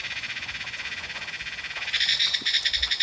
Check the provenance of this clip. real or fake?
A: fake